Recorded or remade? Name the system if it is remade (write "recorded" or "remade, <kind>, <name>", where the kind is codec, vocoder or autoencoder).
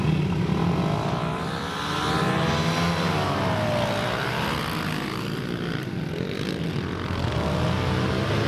recorded